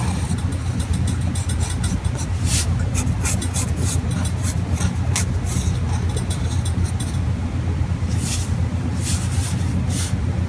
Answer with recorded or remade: recorded